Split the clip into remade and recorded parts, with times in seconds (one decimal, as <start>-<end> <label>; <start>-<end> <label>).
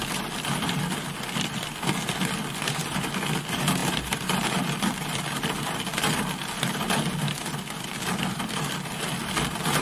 0.0-9.8 recorded